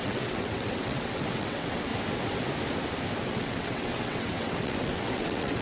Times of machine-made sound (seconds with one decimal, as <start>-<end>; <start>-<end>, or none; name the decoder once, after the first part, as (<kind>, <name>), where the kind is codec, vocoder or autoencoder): 0.0-1.9 (vocoder, WaveNeXt); 3.2-5.6